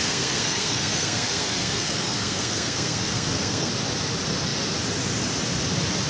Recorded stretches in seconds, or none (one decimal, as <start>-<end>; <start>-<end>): 3.7-6.1

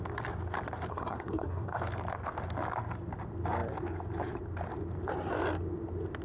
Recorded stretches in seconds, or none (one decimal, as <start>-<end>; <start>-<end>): 0.0-0.9; 1.8-6.2